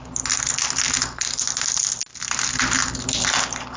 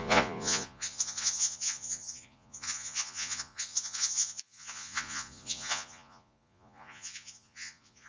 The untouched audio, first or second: first